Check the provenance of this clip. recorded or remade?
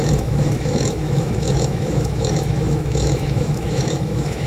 remade